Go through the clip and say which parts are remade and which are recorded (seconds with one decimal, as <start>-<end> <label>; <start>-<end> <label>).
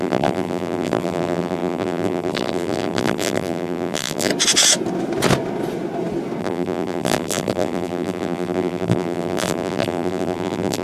0.0-4.3 remade; 4.3-6.4 recorded; 6.4-10.8 remade